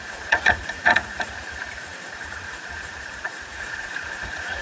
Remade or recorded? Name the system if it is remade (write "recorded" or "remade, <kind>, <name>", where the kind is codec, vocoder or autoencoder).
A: remade, vocoder, Vocos